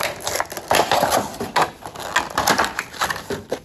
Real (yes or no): yes